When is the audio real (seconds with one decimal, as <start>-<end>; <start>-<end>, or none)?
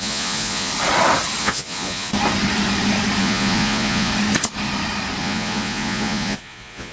0.7-1.4; 2.1-3.2; 4.1-5.2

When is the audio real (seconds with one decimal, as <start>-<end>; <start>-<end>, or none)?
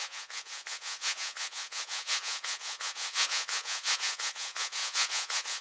none